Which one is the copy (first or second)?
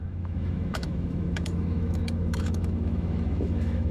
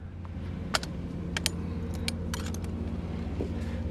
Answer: first